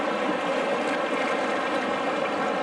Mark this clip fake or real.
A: real